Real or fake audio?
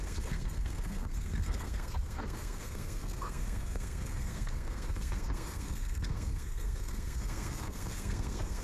fake